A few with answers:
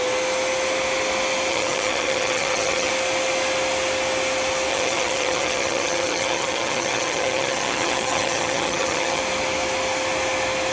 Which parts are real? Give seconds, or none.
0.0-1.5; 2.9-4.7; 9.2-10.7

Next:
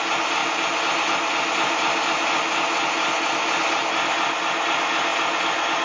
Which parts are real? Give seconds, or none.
0.0-5.8

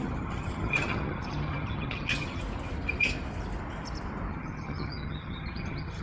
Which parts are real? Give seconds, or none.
2.4-4.3

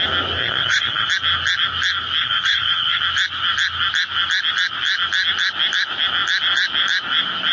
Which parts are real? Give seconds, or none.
0.0-0.4; 1.1-2.2; 3.0-7.5

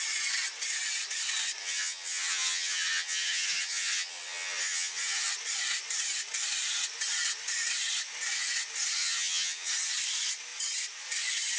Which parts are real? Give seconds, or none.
0.0-1.6; 5.3-9.0; 9.7-11.6

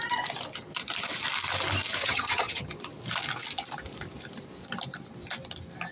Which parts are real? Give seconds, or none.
0.0-2.0; 2.7-5.9

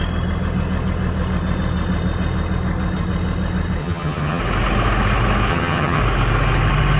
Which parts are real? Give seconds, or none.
0.0-3.8; 4.4-5.5; 6.0-7.0

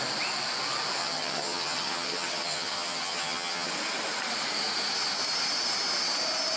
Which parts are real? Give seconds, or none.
0.0-1.0; 3.7-6.6